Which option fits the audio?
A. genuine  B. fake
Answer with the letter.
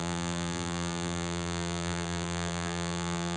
B